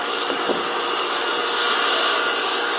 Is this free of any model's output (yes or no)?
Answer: yes